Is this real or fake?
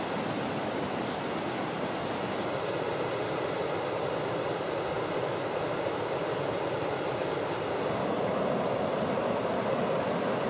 real